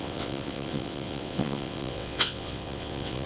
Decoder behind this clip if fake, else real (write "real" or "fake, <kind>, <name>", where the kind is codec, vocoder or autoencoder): fake, vocoder, WaveNeXt